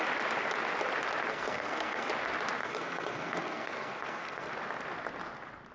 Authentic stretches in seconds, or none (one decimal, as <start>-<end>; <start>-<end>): 0.0-1.3; 2.1-2.6; 4.5-5.7